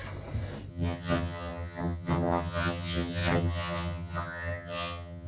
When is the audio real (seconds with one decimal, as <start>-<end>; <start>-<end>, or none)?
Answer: 0.0-0.7